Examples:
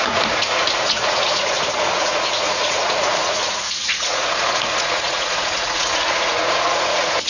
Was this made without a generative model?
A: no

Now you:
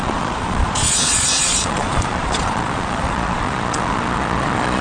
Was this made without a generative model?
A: no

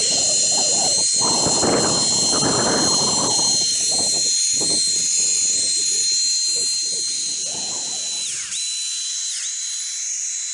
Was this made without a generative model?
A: yes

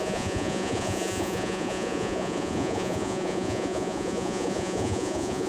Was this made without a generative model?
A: no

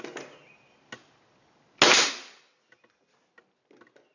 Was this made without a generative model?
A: yes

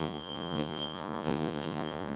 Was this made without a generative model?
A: no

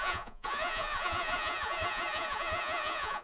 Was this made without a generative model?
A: no